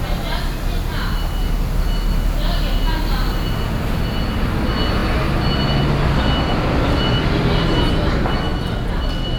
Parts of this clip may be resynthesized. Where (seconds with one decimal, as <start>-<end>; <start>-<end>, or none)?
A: none